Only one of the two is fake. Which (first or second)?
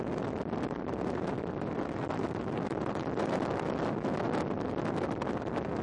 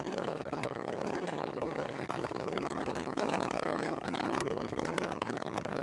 second